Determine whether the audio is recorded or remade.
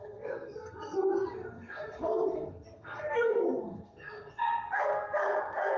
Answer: remade